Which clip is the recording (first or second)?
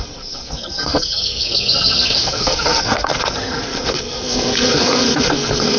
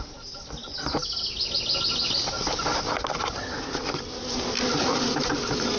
second